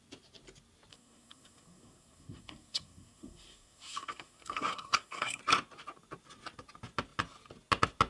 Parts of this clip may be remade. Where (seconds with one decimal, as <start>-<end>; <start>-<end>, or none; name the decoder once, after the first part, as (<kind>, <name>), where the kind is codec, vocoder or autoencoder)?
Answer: 0.9-5.4 (codec, SNAC)